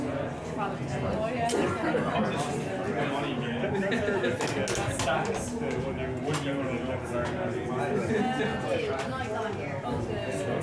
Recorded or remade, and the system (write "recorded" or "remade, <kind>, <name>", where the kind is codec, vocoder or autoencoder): recorded